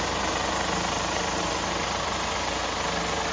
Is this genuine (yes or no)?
yes